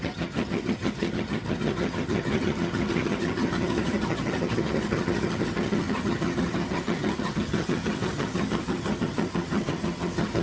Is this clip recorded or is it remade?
remade